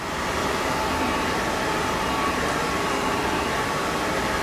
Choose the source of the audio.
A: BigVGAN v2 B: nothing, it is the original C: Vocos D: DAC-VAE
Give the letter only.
B